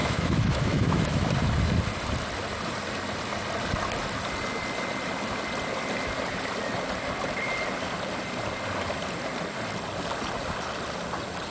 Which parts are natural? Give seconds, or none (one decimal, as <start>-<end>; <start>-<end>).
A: 1.3-11.5